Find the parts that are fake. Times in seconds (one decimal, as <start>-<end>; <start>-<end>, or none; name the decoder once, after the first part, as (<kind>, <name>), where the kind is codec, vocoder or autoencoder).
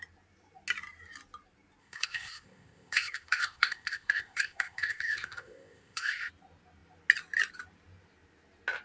1.8-6.3 (codec, ZipCodec)